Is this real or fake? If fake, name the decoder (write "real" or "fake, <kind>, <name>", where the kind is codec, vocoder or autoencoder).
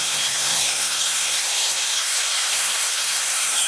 fake, codec, SNAC